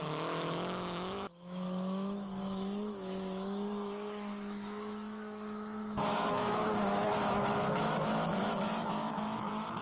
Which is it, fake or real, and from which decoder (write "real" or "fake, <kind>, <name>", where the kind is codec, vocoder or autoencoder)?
fake, autoencoder, DAC-VAE